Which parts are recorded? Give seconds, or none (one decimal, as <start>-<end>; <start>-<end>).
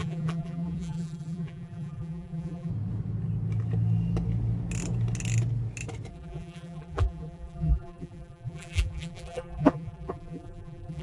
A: 2.7-6.1